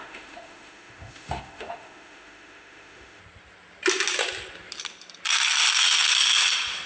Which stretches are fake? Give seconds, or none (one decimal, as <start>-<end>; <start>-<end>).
0.0-3.2

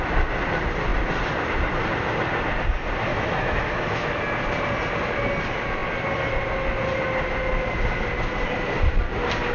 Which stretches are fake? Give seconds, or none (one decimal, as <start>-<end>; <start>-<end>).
3.1-4.2